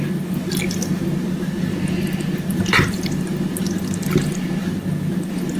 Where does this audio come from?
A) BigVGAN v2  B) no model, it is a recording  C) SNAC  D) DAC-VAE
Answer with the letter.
B